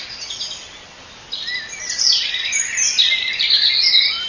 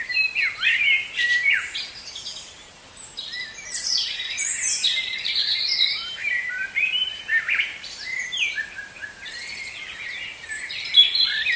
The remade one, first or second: second